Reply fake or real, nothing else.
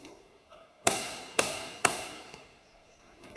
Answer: fake